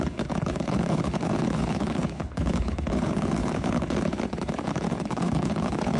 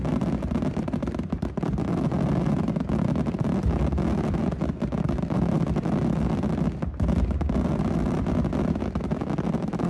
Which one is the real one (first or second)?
second